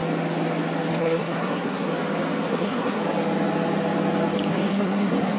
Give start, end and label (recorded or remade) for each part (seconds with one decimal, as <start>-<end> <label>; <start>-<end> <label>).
0.0-0.9 recorded; 0.9-1.9 remade; 1.9-2.5 recorded; 2.5-3.0 remade; 3.0-4.5 recorded; 4.5-5.4 remade